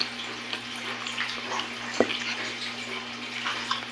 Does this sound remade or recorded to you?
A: recorded